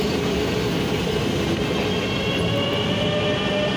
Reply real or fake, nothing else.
real